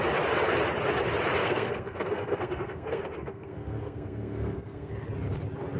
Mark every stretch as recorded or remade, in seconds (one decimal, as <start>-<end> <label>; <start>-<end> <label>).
0.0-1.4 recorded; 1.4-4.9 remade; 4.9-5.8 recorded